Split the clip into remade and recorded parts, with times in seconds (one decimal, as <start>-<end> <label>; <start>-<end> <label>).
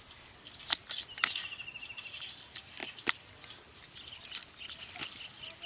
0.0-0.8 recorded; 0.8-1.8 remade; 1.8-2.8 recorded; 2.8-4.8 remade; 4.8-5.7 recorded